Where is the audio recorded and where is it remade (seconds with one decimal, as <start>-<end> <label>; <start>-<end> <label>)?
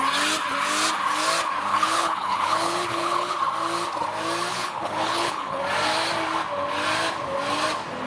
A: 0.0-1.7 recorded; 1.7-3.3 remade; 3.3-4.5 recorded; 4.5-5.6 remade; 5.6-8.1 recorded